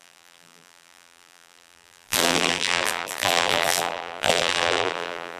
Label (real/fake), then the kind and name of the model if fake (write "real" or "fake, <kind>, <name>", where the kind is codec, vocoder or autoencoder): fake, vocoder, BigVGAN v2